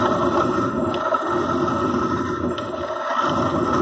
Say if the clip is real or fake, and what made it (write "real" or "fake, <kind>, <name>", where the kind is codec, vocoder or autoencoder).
real